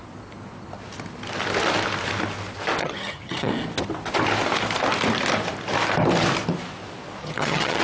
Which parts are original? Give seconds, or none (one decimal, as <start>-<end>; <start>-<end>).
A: 0.0-2.8; 3.5-7.2